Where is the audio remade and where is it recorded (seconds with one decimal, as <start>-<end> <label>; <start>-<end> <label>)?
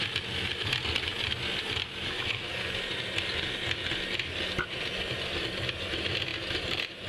0.0-6.3 recorded; 6.3-7.1 remade